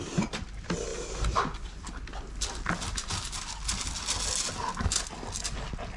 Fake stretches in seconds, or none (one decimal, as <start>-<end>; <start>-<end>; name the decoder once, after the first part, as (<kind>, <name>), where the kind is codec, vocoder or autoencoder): none